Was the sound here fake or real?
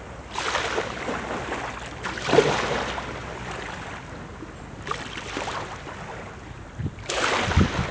real